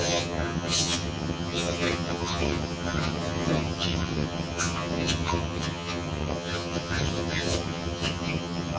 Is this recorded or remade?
remade